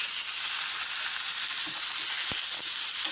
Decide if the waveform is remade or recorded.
recorded